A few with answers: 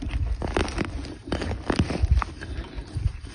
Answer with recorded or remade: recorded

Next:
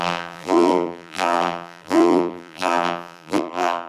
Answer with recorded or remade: remade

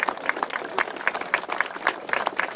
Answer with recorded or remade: recorded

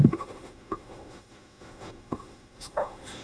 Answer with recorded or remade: remade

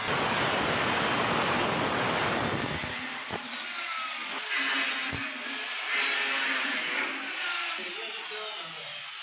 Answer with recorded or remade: recorded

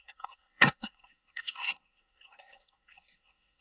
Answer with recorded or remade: remade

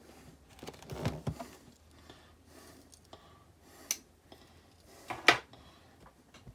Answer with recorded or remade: recorded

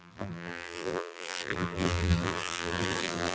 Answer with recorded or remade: remade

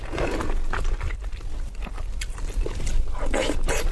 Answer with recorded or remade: recorded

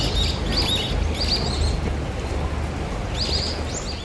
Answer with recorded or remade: recorded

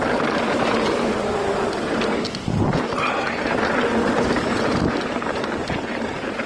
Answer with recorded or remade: recorded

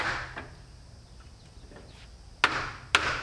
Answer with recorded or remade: recorded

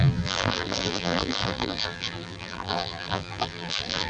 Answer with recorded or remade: remade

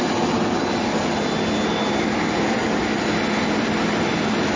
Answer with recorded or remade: recorded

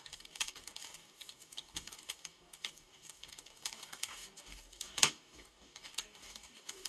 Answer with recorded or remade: remade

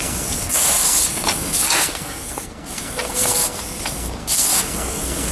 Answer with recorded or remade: remade